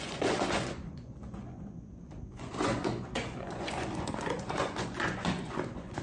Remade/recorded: remade